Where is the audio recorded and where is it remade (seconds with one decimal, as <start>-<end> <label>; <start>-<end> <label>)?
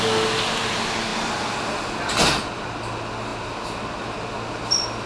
0.0-5.1 recorded